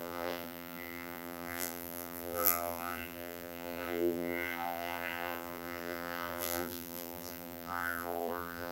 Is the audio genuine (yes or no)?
no